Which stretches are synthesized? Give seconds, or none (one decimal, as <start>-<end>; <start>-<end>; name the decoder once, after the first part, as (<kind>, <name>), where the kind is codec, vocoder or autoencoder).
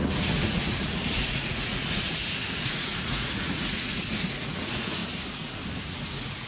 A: 0.0-5.0 (vocoder, Vocos); 5.8-6.5